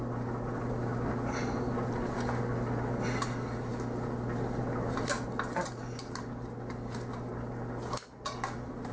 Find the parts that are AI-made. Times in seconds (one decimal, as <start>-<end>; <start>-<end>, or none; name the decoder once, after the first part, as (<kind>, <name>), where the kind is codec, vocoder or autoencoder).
none